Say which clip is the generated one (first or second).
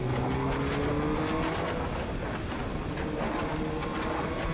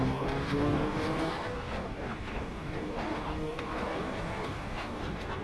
second